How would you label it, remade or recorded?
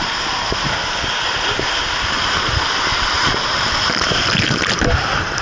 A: recorded